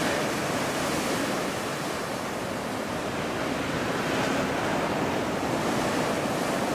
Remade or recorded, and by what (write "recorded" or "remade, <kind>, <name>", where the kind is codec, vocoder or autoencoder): recorded